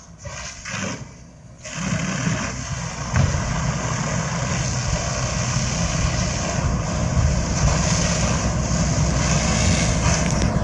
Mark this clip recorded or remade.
recorded